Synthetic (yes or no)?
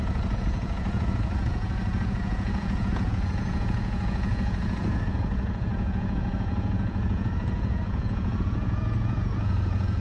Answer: yes